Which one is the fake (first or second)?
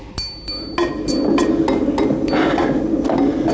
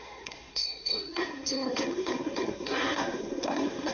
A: second